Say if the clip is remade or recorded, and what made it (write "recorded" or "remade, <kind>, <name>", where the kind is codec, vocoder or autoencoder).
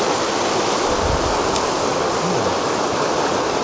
recorded